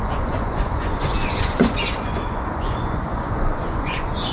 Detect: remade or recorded remade